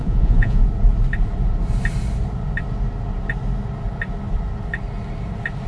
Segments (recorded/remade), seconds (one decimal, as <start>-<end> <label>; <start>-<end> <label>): 0.0-0.6 remade; 0.6-5.7 recorded